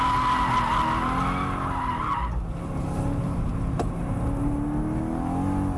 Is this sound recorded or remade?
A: recorded